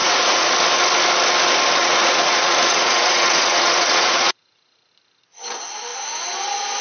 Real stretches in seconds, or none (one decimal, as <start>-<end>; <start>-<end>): 0.5-1.8; 4.9-6.8

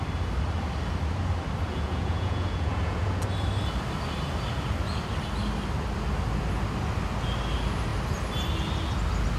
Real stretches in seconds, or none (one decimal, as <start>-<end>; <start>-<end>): 0.0-1.7; 3.2-9.4

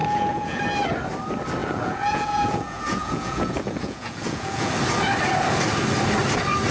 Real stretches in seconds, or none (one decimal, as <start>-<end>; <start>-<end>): 0.6-1.6; 4.7-6.7